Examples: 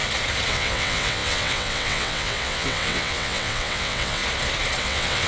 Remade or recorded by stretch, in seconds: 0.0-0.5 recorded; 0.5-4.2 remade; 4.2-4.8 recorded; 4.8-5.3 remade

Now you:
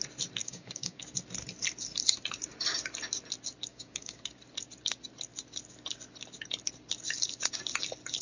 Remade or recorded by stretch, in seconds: 0.0-0.4 recorded; 0.4-1.0 remade; 1.0-3.7 recorded; 3.7-4.2 remade; 4.2-8.2 recorded

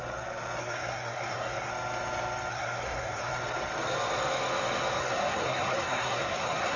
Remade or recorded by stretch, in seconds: 0.0-0.6 recorded; 0.6-1.7 remade; 1.7-2.5 recorded; 2.5-3.3 remade; 3.3-5.0 recorded; 5.0-6.8 remade

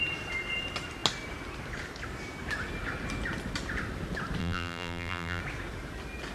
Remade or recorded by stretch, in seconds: 0.0-4.4 recorded; 4.4-5.4 remade; 5.4-6.3 recorded